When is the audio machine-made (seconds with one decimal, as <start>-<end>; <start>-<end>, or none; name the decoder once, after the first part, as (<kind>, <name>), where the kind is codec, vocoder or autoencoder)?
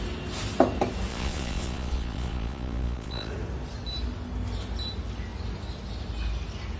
1.1-3.3 (vocoder, Vocos)